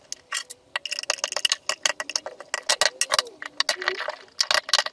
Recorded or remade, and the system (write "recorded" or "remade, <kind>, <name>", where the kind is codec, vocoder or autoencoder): recorded